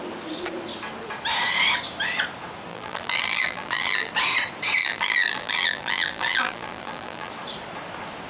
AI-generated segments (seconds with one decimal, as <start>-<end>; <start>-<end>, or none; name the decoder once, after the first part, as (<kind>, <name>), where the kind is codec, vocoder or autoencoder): 2.7-4.1 (vocoder, BigVGAN v2); 4.8-7.3